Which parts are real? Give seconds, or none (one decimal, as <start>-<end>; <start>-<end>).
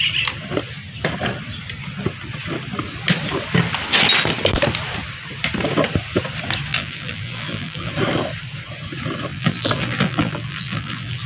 0.0-6.7; 7.9-9.3